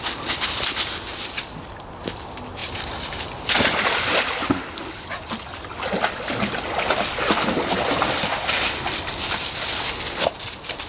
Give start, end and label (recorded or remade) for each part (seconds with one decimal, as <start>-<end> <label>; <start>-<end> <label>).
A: 0.0-10.9 recorded